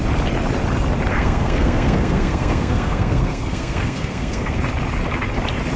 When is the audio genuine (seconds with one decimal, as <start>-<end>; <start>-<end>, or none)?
0.0-1.1; 4.6-5.8